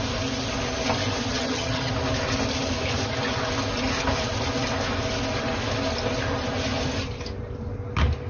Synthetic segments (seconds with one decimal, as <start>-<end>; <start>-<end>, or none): 1.3-1.9